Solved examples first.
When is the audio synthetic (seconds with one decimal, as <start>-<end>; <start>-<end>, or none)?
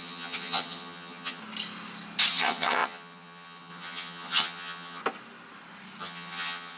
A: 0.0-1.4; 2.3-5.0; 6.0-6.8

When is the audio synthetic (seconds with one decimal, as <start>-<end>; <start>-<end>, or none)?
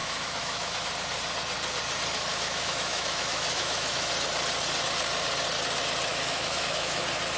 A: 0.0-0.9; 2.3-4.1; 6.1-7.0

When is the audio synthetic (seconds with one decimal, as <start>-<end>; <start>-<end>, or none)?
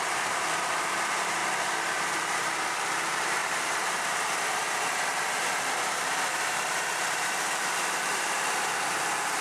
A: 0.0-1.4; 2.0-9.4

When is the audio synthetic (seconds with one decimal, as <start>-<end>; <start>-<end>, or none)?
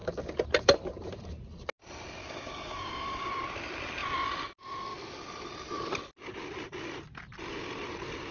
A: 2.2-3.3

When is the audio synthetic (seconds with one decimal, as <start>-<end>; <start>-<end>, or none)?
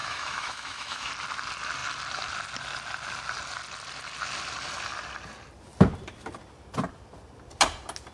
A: 0.0-1.1